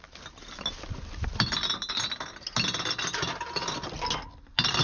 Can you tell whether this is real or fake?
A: real